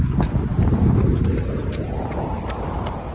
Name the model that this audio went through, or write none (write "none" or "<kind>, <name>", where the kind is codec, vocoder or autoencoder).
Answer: vocoder, BigVGAN v2